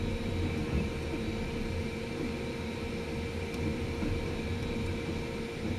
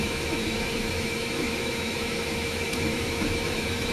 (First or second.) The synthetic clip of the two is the second